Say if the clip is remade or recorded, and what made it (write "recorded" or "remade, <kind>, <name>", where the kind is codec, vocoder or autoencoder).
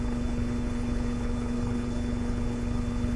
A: remade, codec, HILCodec